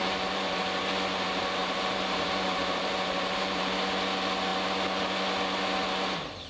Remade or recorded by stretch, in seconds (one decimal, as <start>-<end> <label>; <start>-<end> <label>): 0.0-0.6 remade; 0.6-1.6 recorded; 1.6-3.7 remade; 3.7-6.5 recorded